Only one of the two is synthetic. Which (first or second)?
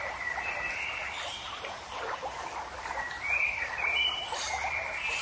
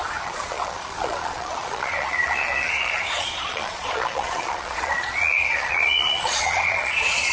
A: second